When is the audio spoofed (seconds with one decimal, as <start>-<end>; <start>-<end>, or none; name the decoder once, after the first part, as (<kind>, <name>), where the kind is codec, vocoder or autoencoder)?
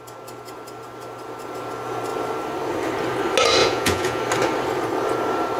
3.6-4.2 (vocoder, Vocos)